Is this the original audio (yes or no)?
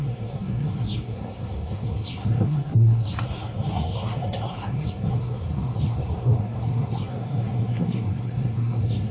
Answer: no